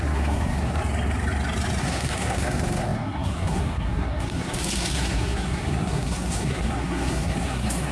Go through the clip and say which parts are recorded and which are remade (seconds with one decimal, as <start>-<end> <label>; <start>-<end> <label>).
0.0-0.8 remade; 0.8-1.8 recorded; 1.8-7.9 remade